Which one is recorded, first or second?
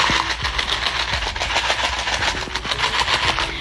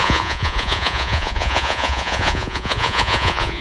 first